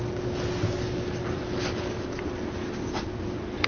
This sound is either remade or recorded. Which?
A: recorded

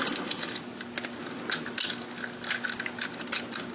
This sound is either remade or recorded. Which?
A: recorded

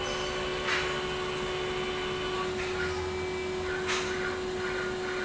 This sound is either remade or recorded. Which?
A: recorded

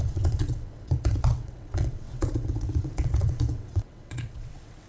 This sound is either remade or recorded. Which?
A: remade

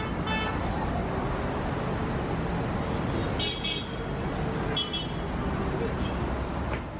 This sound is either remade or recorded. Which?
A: recorded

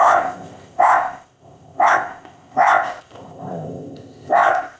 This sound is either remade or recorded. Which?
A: remade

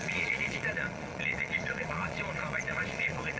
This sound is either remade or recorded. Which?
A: remade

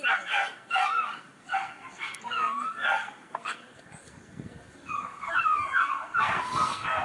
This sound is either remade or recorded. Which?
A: remade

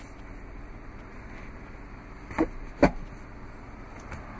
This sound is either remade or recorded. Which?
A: recorded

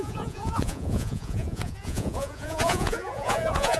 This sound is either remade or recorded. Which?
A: remade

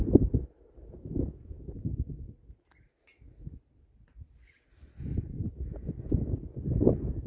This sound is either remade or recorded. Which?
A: recorded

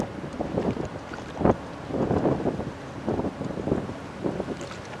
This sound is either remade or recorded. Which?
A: recorded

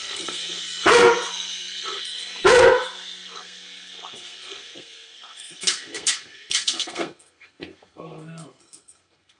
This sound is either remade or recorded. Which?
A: remade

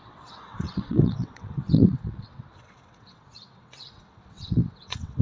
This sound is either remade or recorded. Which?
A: remade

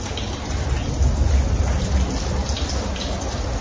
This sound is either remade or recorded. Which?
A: recorded